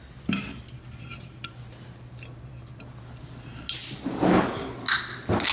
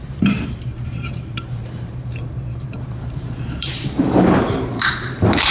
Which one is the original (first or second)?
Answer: first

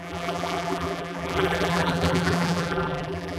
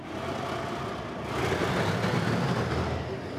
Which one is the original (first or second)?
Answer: second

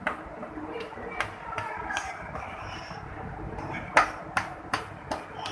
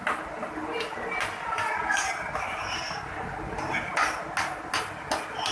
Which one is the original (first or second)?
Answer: second